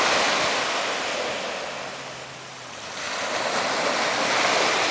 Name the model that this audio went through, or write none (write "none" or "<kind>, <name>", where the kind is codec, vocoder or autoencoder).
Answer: none